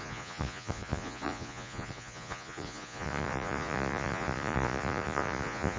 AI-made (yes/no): yes